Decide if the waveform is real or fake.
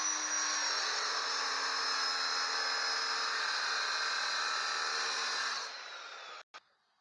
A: real